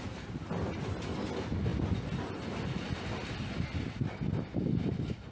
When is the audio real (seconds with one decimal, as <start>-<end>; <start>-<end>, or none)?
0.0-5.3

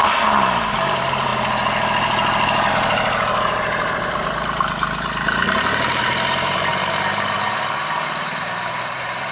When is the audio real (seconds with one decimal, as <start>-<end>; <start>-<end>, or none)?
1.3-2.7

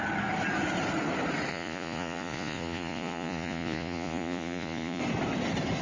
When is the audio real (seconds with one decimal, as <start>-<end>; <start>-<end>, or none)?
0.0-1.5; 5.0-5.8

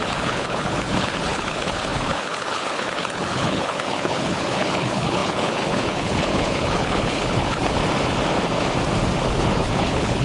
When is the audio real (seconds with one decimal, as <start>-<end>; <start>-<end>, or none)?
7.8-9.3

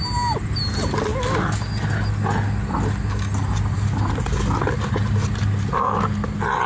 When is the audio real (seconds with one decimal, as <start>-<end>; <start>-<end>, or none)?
0.0-6.7

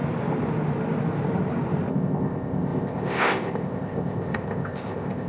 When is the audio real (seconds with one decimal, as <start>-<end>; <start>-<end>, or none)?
0.0-1.9